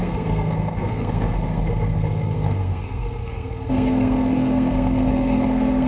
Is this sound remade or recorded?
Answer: remade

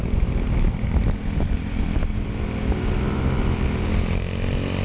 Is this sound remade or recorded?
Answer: recorded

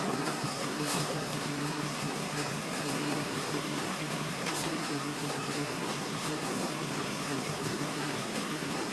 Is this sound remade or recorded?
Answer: remade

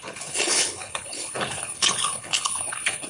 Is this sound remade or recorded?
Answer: remade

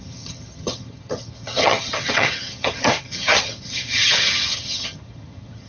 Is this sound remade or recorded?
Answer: remade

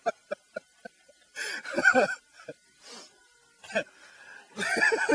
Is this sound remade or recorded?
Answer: recorded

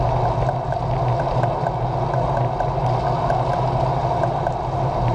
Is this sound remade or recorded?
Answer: recorded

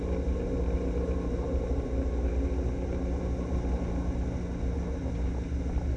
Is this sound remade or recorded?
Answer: recorded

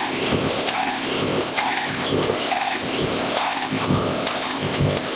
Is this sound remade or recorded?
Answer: remade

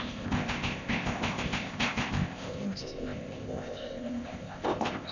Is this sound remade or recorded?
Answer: remade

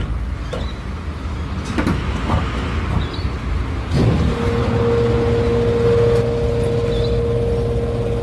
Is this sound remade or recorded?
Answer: recorded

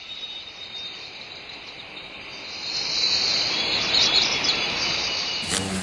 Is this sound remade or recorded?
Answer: remade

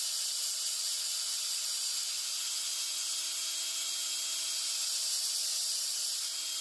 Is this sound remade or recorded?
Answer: recorded